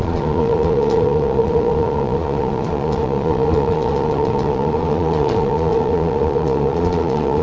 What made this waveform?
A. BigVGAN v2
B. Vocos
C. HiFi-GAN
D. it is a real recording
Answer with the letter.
B